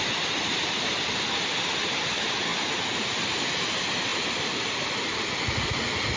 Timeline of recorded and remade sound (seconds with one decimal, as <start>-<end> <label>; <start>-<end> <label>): 0.0-4.1 recorded; 4.1-5.4 remade; 5.4-6.2 recorded